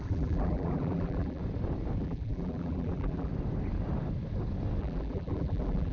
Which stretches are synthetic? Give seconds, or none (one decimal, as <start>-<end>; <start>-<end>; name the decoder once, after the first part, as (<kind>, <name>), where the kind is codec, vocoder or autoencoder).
0.0-1.4 (vocoder, BigVGAN v2); 2.0-3.3; 4.8-5.9